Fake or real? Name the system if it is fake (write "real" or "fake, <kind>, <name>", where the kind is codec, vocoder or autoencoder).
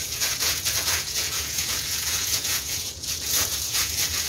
fake, vocoder, Vocos